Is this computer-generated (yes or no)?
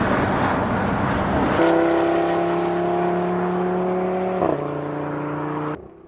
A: no